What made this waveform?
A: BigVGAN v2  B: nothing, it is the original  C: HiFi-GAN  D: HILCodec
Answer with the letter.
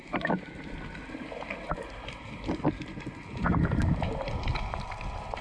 B